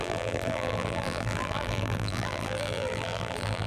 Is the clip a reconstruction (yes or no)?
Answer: yes